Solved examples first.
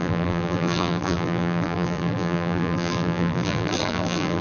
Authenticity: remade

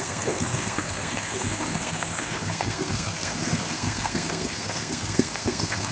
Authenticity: remade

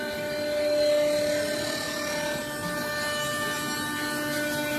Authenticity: recorded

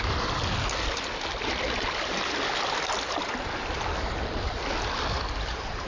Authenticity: recorded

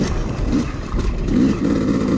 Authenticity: recorded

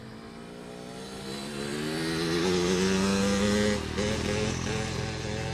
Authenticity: recorded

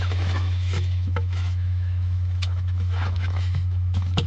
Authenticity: remade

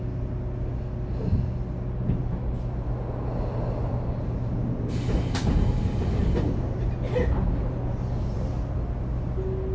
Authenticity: recorded